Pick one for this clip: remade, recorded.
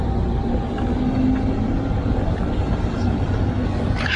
recorded